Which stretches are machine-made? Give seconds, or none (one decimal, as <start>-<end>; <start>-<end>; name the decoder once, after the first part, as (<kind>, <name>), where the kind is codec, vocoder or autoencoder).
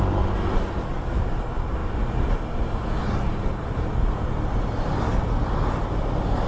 none